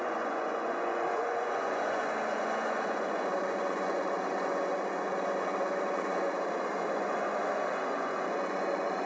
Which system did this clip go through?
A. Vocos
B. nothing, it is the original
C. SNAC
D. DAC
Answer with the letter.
A